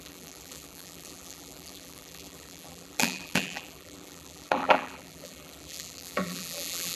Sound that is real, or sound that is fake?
fake